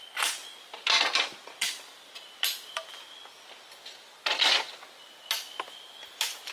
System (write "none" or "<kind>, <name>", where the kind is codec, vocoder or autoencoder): none